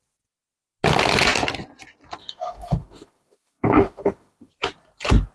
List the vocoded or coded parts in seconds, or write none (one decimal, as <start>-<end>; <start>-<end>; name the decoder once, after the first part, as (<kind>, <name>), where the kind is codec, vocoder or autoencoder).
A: 2.2-4.5 (autoencoder, DAC-VAE)